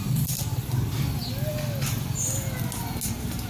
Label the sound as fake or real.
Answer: real